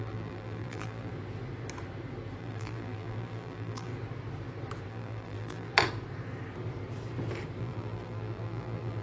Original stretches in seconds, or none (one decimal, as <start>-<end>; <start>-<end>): 1.1-2.4; 3.9-4.9; 5.7-7.6